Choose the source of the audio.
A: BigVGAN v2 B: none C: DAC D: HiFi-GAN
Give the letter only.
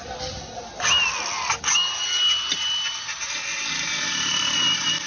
B